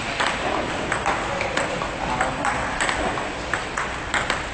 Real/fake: real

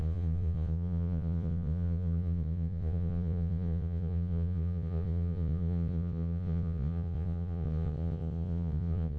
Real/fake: fake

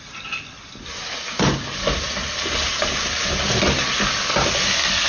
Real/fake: real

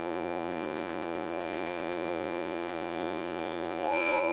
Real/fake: fake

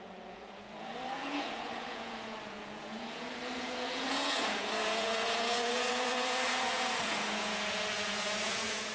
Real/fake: fake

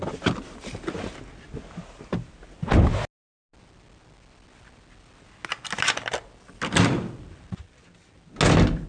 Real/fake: real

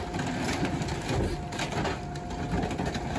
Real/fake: real